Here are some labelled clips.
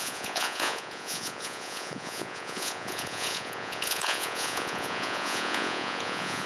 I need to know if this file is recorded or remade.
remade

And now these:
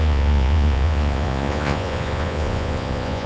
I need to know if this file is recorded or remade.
remade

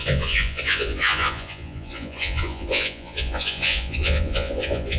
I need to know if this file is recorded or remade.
remade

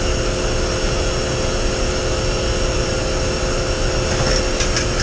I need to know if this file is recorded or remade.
recorded